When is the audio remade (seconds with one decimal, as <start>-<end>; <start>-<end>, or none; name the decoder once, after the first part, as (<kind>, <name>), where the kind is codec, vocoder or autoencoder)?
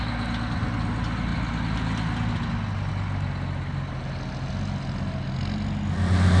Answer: none